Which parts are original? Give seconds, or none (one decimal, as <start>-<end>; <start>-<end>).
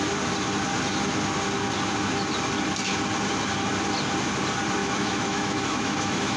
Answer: 0.0-4.8